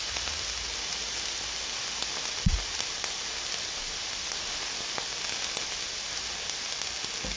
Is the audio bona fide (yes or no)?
yes